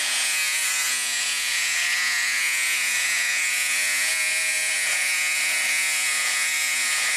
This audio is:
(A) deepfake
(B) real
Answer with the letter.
A